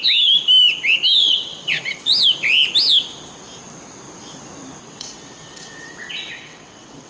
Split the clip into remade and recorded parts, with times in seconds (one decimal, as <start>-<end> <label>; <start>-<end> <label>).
0.0-1.2 recorded; 1.2-2.1 remade; 2.1-4.8 recorded; 4.8-7.1 remade